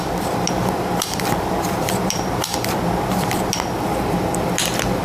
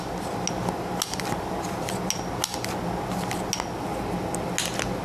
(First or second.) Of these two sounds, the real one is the second